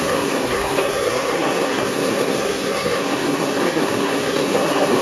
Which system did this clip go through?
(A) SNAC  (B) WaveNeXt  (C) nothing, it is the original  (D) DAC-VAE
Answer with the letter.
A